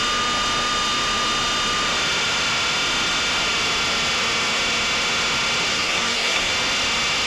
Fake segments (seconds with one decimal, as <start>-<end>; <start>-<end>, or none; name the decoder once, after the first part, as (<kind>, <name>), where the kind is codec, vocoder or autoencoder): 5.7-6.5 (codec, SNAC)